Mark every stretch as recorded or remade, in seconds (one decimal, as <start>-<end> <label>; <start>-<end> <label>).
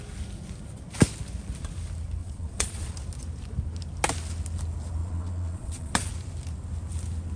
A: 0.0-2.2 recorded; 2.2-2.9 remade; 2.9-5.0 recorded; 5.0-6.1 remade; 6.1-7.4 recorded